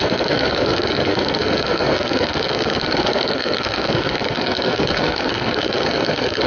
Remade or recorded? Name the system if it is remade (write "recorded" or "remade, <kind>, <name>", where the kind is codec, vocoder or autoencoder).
remade, codec, SNAC